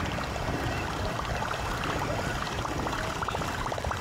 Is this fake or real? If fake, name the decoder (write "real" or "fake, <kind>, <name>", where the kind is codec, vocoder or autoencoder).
real